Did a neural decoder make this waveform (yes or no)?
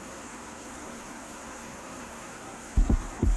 yes